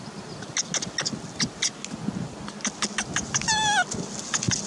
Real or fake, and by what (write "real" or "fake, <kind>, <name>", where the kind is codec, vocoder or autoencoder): real